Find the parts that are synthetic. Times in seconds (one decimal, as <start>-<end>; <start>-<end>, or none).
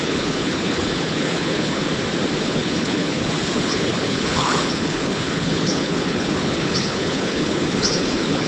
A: 0.0-1.8; 2.4-8.5